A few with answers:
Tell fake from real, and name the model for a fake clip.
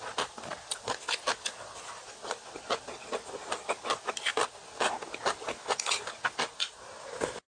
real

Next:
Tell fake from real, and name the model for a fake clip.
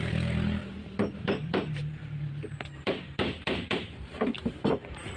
fake, vocoder, BigVGAN v2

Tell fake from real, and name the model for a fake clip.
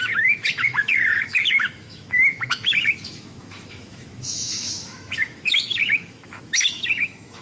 fake, autoencoder, DAC-VAE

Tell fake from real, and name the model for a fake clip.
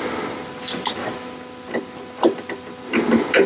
real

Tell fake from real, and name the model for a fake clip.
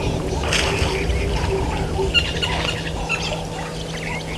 real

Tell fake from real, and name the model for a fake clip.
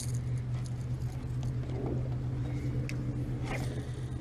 real